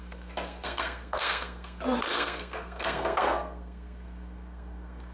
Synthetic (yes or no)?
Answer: yes